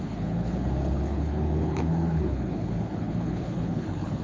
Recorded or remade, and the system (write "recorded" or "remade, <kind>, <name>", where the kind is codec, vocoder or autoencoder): remade, codec, HILCodec